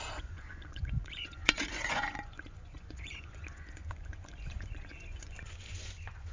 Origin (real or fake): fake